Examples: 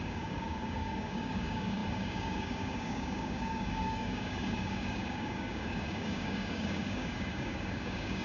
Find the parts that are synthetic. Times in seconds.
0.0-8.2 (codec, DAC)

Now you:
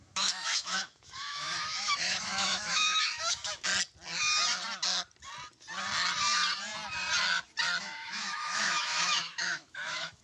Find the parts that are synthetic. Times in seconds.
0.0-3.7 (autoencoder, DAC-VAE); 7.8-10.2